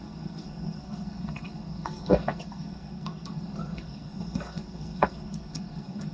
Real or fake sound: fake